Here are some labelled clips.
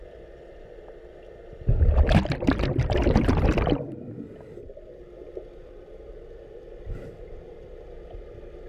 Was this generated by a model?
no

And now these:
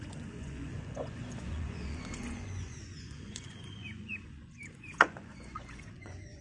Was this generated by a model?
yes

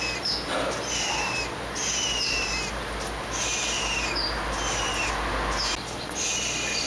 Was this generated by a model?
no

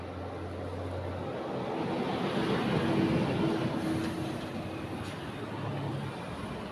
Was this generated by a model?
no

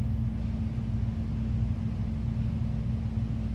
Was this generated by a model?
no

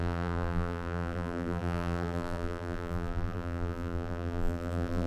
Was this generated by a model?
yes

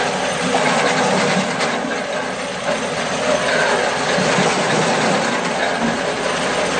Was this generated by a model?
no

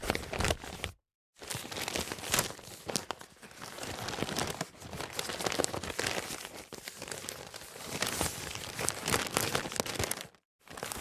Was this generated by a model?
no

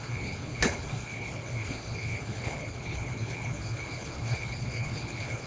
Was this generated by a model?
yes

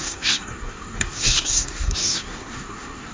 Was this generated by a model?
yes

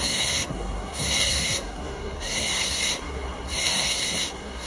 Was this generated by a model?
yes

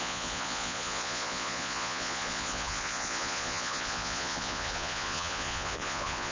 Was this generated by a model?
yes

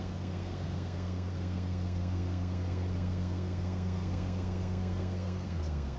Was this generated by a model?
yes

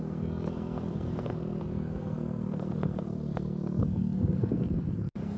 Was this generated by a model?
yes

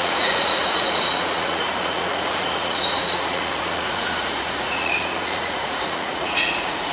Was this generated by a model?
yes